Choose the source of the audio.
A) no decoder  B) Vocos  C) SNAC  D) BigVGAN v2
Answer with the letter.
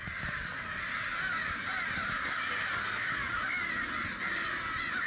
A